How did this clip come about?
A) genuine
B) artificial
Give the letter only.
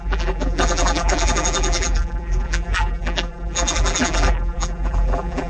B